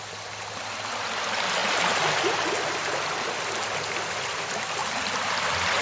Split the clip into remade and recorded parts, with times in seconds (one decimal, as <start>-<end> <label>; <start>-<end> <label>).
0.0-5.8 recorded